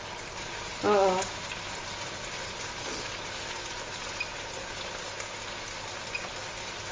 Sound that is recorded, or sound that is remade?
recorded